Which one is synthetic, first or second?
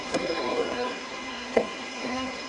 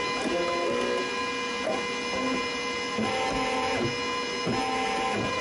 first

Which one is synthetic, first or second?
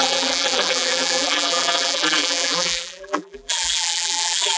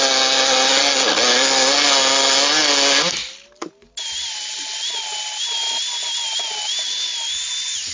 first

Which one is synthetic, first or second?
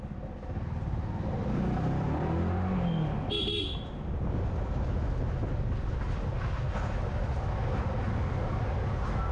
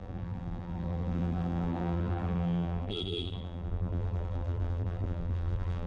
second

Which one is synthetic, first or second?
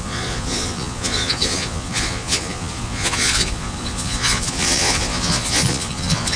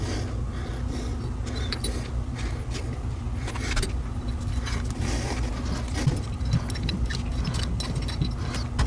first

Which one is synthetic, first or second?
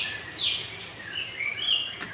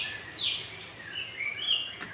first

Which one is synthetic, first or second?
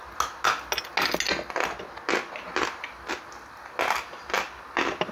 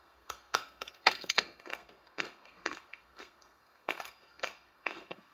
second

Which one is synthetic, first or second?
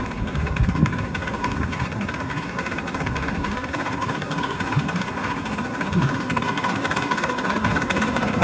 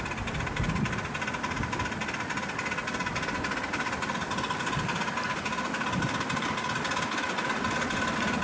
first